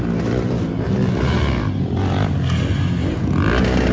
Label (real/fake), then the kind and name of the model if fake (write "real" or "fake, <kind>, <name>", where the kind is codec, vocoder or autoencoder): real